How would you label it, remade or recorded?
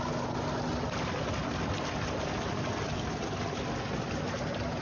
recorded